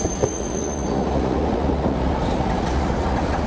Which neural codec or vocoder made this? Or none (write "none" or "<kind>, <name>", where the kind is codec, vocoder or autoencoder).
vocoder, Vocos